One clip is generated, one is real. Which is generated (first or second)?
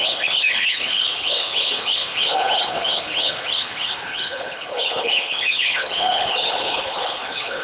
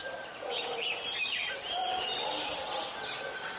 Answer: first